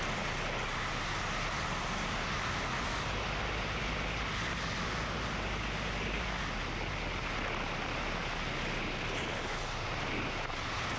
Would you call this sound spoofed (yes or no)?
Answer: no